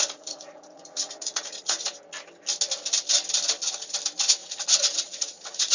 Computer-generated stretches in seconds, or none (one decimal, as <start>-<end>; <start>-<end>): 0.0-1.9; 4.4-5.7